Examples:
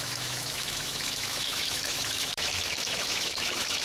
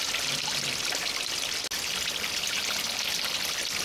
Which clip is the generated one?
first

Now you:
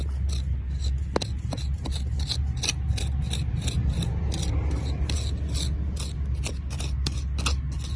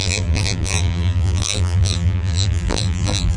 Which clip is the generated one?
second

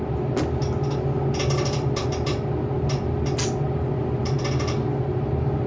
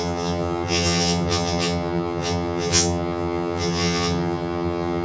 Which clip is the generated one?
second